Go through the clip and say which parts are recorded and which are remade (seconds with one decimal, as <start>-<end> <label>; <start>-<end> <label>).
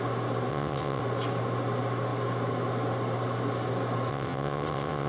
0.0-0.5 recorded; 0.5-1.0 remade; 1.0-4.1 recorded; 4.1-5.1 remade